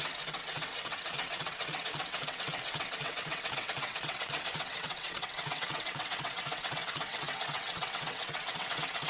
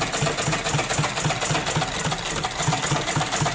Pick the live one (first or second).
second